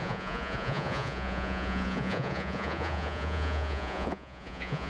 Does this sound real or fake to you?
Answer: fake